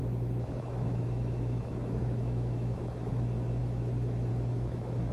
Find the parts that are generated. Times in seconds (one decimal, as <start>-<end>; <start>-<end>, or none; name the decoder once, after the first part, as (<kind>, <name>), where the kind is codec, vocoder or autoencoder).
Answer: 0.0-5.1 (autoencoder, DAC-VAE)